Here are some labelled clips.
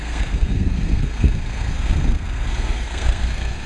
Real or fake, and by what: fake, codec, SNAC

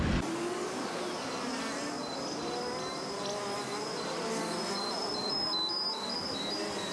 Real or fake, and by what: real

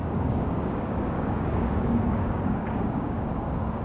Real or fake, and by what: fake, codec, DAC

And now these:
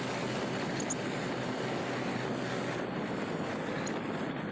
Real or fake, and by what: real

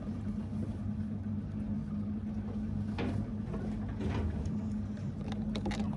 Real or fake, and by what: real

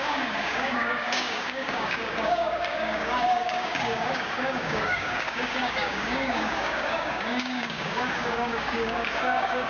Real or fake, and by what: fake, codec, DAC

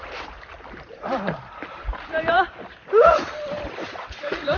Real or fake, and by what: fake, vocoder, BigVGAN v2